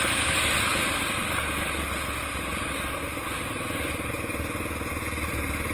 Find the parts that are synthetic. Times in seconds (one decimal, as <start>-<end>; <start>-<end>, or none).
none